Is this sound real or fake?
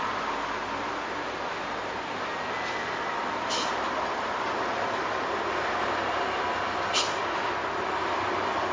real